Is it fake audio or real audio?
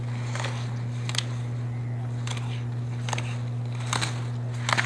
real